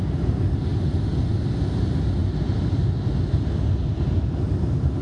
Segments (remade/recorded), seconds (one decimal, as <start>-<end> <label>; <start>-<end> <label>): 0.0-5.0 recorded